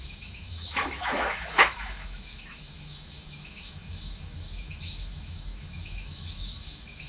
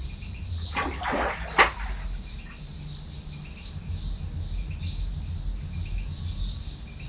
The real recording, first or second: second